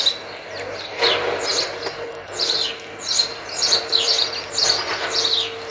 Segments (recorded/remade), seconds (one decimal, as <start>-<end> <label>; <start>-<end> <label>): 0.0-1.5 recorded; 1.5-4.9 remade; 4.9-5.7 recorded